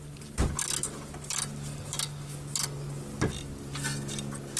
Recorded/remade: recorded